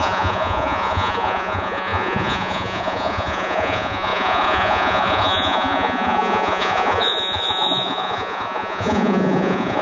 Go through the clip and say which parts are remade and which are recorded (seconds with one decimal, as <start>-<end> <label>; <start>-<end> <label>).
0.0-9.8 remade